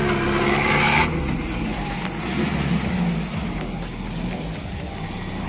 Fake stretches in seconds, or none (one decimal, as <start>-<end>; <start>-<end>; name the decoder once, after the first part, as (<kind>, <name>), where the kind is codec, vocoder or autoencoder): none